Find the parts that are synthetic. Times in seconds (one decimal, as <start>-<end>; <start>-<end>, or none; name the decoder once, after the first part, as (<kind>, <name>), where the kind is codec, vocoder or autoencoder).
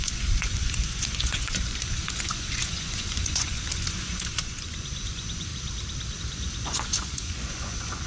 0.0-5.5 (vocoder, Vocos); 6.2-8.1